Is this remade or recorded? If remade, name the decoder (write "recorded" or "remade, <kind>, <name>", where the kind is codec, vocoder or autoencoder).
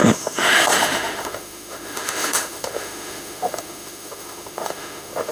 remade, autoencoder, DAC-VAE